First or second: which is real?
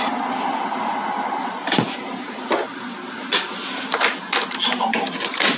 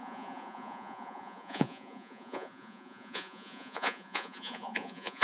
first